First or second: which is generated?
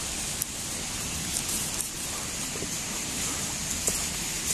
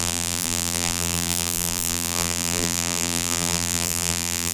second